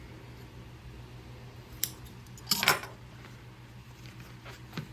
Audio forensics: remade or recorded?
recorded